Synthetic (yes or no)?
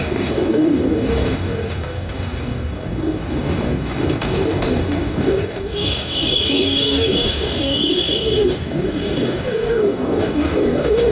yes